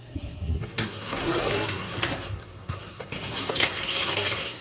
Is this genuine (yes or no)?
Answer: no